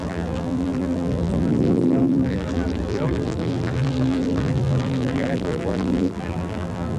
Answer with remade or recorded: remade